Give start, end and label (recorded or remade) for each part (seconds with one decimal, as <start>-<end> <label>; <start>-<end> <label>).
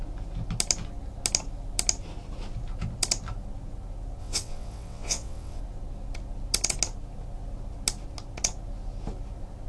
0.0-4.2 recorded; 4.2-5.6 remade; 5.6-9.7 recorded